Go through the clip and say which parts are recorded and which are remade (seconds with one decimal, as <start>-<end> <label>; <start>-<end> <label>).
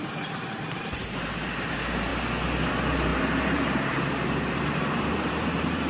0.0-2.1 remade; 2.1-2.7 recorded; 2.7-5.9 remade